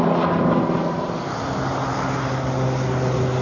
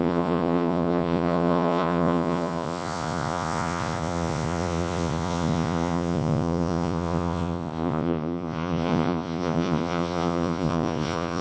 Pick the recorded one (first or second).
first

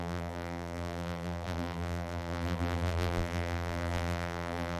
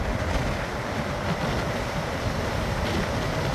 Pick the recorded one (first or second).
second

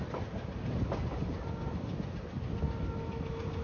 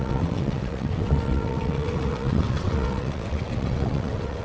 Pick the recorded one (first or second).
first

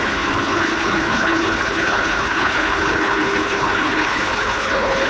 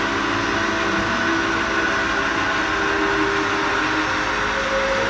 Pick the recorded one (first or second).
second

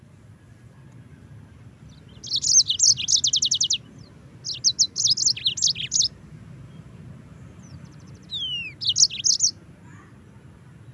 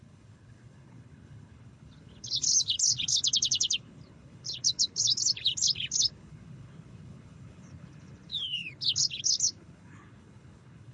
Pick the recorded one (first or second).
first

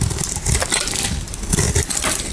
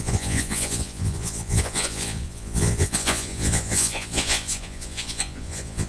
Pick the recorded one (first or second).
first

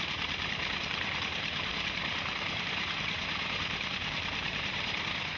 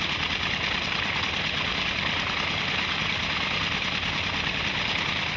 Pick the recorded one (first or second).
second